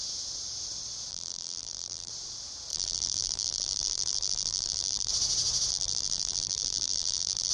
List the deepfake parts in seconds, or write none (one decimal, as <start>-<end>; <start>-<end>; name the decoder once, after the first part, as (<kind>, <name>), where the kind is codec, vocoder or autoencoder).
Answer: 1.1-2.1 (vocoder, BigVGAN v2); 2.7-5.1; 5.7-7.5